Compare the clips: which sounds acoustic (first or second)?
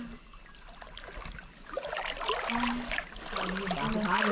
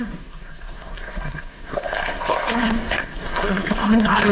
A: first